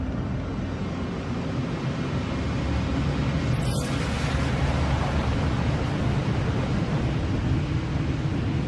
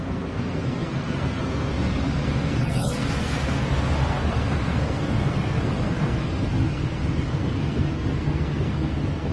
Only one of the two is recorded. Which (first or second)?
first